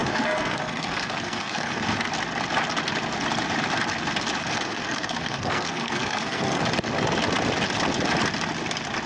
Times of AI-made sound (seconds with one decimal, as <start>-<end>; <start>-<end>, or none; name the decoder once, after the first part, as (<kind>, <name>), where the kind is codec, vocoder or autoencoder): 0.0-1.8 (codec, SNAC); 4.4-6.6